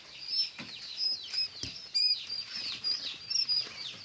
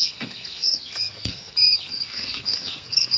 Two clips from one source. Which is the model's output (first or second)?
second